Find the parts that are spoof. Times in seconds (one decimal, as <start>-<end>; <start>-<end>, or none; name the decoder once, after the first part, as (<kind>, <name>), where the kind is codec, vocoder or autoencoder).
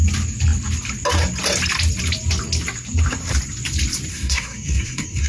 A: 4.1-5.3 (codec, SNAC)